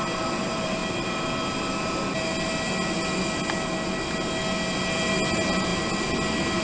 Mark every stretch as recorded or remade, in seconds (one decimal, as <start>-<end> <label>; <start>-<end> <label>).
0.0-0.8 remade; 0.8-4.8 recorded; 4.8-5.7 remade; 5.7-6.6 recorded